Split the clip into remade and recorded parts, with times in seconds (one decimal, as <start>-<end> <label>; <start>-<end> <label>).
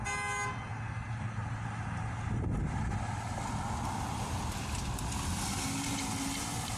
0.0-6.8 recorded